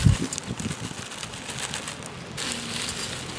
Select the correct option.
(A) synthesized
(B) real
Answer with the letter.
B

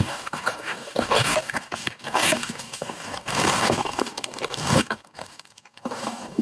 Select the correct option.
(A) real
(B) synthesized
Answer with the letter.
B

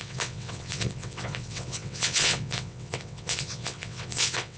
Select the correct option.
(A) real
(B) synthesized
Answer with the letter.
B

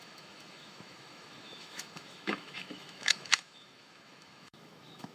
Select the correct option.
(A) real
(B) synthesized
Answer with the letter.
B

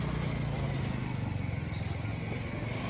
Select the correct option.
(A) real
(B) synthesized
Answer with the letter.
A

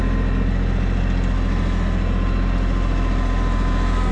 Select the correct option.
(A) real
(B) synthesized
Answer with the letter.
A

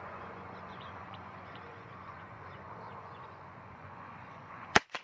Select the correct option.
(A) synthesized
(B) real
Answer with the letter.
A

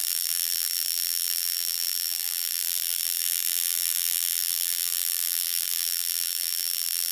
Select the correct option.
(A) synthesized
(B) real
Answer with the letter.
A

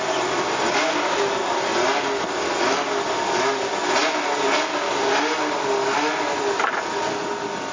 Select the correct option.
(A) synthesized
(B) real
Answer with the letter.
B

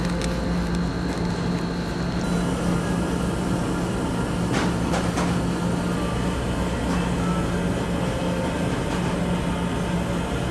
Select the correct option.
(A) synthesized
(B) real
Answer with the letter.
B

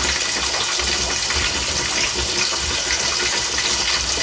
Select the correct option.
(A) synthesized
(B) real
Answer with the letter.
B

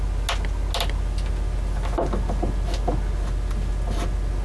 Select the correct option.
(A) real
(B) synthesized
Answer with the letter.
A